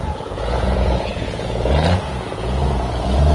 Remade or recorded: remade